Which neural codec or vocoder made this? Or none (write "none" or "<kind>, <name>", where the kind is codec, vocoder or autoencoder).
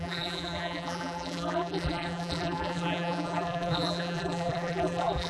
vocoder, BigVGAN v2